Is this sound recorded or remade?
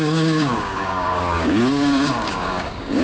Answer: remade